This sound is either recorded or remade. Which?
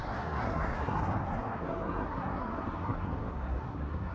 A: remade